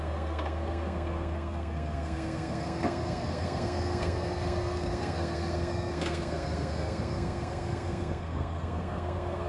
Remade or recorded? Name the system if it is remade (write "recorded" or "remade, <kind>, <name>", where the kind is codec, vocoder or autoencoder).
remade, codec, SNAC